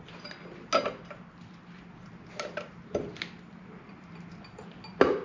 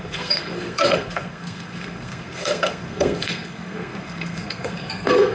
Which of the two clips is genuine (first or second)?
first